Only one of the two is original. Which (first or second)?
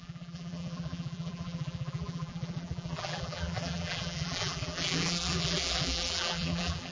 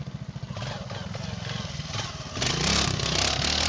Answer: second